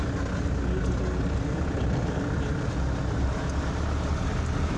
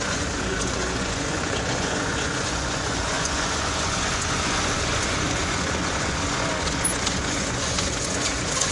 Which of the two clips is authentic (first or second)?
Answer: first